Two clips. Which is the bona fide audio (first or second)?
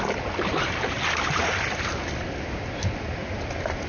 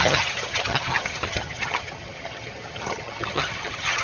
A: first